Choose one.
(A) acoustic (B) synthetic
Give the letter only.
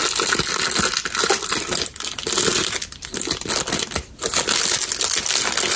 A